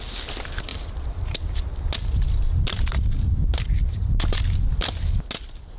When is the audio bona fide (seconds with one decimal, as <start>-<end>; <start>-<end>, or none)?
0.0-0.7; 1.6-5.8